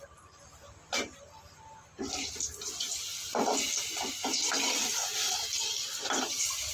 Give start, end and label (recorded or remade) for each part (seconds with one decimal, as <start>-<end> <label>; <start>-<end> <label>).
0.0-0.6 remade; 0.6-1.3 recorded; 1.3-3.1 remade; 3.1-4.1 recorded; 4.1-6.7 remade